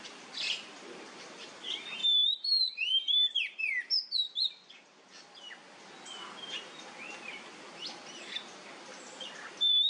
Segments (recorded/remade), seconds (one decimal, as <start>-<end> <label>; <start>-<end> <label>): 0.0-9.9 recorded